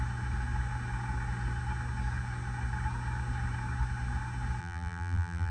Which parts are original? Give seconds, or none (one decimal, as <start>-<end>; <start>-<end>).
0.0-4.6

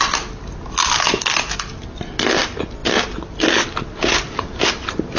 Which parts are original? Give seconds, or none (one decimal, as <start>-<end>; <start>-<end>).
0.0-5.2

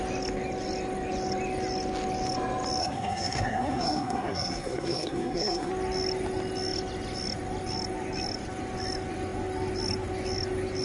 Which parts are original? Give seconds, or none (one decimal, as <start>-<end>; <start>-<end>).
0.0-2.8; 5.7-10.8